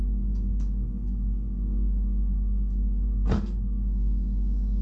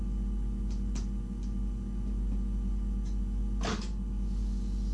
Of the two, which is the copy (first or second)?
first